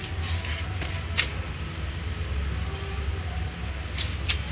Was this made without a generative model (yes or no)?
yes